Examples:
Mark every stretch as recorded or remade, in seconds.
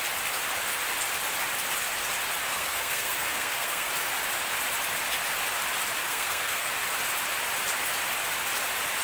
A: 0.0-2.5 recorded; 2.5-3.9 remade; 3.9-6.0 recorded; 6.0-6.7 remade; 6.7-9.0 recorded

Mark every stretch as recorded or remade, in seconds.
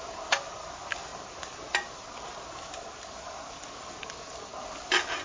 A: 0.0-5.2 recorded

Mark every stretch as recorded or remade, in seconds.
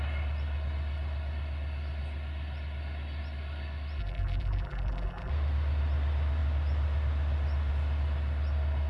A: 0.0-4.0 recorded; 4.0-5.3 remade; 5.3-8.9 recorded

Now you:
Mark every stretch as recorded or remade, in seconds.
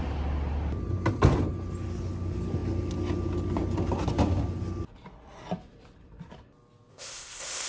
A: 0.0-6.9 recorded; 6.9-7.7 remade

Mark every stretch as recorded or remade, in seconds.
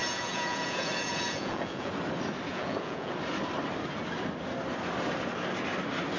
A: 0.0-1.9 remade; 1.9-2.5 recorded; 2.5-3.1 remade; 3.1-6.2 recorded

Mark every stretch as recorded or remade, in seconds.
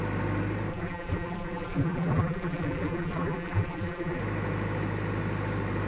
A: 0.0-0.7 recorded; 0.7-4.2 remade; 4.2-5.9 recorded